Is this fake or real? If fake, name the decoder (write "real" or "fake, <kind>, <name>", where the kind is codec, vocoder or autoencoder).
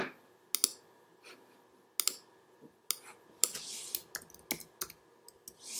real